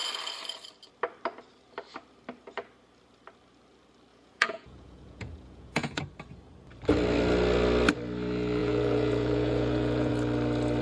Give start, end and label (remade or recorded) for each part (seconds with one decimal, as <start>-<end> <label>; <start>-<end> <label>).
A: 0.0-4.1 recorded; 4.1-6.0 remade; 6.0-8.6 recorded; 8.6-10.1 remade; 10.1-10.8 recorded